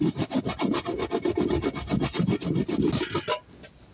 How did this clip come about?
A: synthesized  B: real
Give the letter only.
B